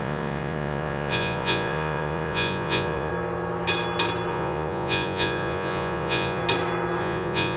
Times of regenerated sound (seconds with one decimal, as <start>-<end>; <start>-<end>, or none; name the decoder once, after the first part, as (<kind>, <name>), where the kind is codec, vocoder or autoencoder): 0.0-3.1 (vocoder, Vocos); 4.3-6.4; 7.0-7.6